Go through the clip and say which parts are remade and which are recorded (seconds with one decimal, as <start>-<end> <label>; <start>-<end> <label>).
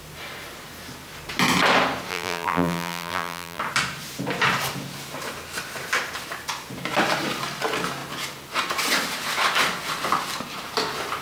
0.0-2.1 recorded; 2.1-3.6 remade; 3.6-11.2 recorded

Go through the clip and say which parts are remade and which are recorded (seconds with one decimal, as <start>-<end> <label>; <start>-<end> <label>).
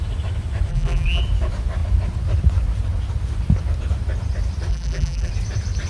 0.0-0.7 recorded; 0.7-1.2 remade; 1.2-4.7 recorded; 4.7-5.3 remade; 5.3-5.9 recorded